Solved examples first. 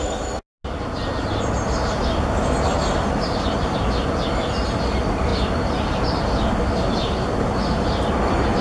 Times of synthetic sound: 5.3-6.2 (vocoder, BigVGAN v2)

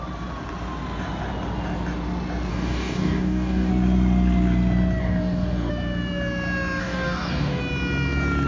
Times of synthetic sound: 2.5-3.7 (codec, DAC); 5.0-5.7; 6.8-7.6

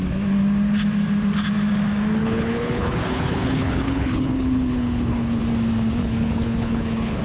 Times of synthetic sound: 2.2-5.4 (codec, HILCodec); 6.0-7.2